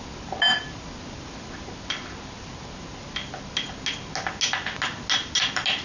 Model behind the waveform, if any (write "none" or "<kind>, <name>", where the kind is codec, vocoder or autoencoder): none